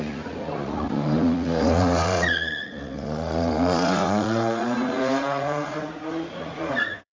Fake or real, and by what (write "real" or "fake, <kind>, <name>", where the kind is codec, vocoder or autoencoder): fake, vocoder, Vocos